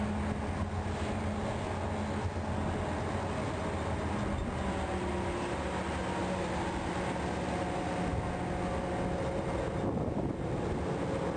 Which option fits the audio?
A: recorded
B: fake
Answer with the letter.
A